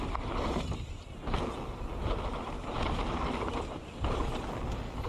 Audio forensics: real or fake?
real